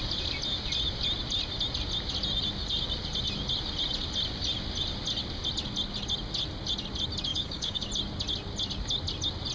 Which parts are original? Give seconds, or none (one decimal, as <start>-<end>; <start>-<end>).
0.0-7.3; 7.9-9.5